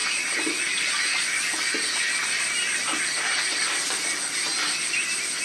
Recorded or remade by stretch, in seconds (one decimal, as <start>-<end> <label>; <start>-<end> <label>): 0.0-5.4 recorded

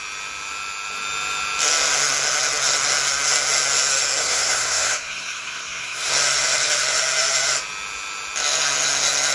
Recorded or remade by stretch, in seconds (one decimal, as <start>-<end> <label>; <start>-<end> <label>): 0.0-4.2 recorded; 4.2-6.1 remade; 6.1-9.3 recorded

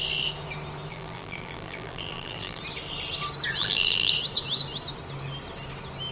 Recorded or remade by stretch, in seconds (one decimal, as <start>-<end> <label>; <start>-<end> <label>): 0.0-0.9 recorded; 0.9-2.6 remade; 2.6-3.6 recorded; 3.6-4.1 remade; 4.1-6.1 recorded

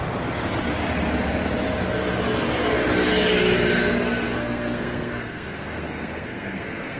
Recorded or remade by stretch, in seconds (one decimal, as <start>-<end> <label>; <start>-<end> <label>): 0.0-4.4 recorded; 4.4-7.0 remade

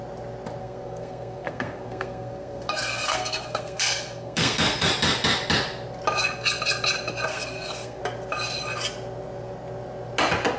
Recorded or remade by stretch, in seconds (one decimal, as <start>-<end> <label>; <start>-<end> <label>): 0.0-0.6 recorded; 0.6-4.9 remade; 4.9-7.3 recorded; 7.3-8.0 remade; 8.0-10.6 recorded

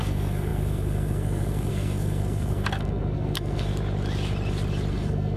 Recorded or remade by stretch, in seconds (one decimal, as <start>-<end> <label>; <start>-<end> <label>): 0.0-3.7 remade; 3.7-4.9 recorded; 4.9-5.4 remade

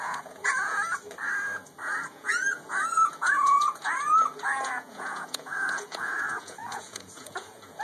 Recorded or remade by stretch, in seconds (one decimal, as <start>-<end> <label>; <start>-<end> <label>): 0.0-0.9 remade; 0.9-2.1 recorded; 2.1-7.8 remade

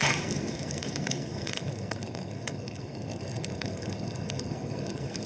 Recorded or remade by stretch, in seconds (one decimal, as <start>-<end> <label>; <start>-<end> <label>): 0.0-5.3 remade